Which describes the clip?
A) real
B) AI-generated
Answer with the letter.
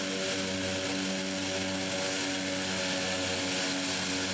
A